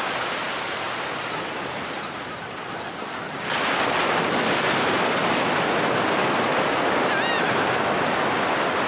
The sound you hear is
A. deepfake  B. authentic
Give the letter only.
B